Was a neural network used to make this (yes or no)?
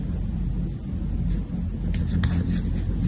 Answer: no